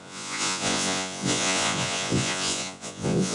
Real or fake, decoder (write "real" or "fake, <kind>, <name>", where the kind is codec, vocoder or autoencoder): fake, vocoder, Vocos